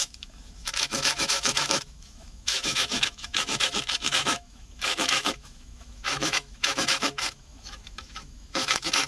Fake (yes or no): yes